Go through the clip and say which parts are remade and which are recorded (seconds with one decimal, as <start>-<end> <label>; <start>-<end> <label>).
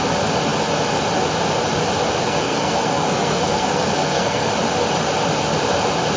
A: 0.0-2.2 recorded; 2.2-4.5 remade; 4.5-6.2 recorded